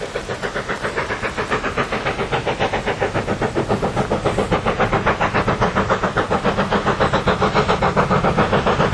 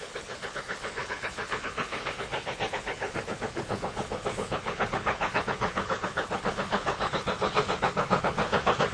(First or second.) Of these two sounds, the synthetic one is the second